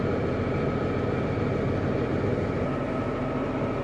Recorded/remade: recorded